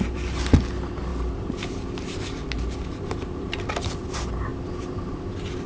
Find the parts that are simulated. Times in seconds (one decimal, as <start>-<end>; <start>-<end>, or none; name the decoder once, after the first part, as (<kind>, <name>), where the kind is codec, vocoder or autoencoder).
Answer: none